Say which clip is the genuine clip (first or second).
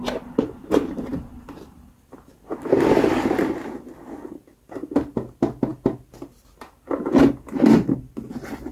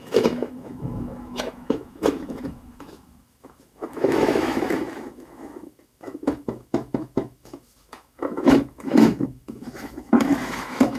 first